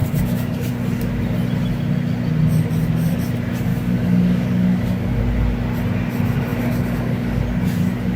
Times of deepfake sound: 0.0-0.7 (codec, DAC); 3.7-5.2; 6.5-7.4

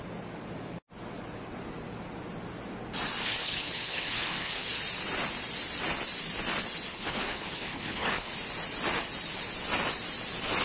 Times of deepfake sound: 3.2-4.6 (codec, HILCodec); 6.9-8.3

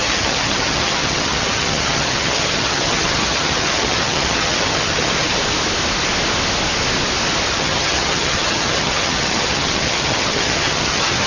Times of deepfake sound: 0.0-5.4 (vocoder, HiFi-GAN); 7.5-11.3

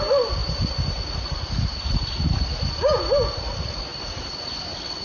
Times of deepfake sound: none

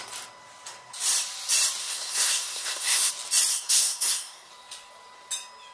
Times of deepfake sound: 1.8-3.1 (codec, SNAC); 3.5-4.5

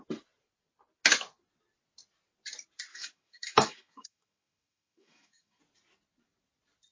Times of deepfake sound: 2.9-5.6 (autoencoder, DAC-VAE)

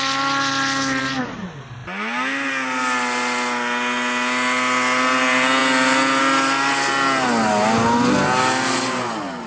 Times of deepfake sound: none